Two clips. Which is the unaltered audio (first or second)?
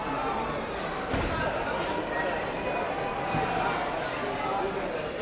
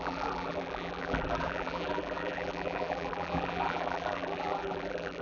first